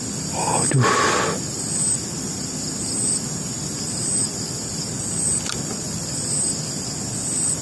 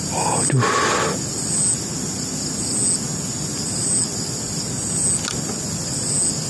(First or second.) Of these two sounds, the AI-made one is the first